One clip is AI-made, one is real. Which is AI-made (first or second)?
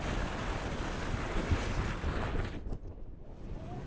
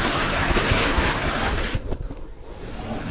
second